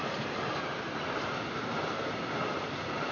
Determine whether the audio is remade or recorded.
remade